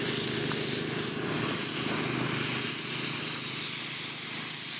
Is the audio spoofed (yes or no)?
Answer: no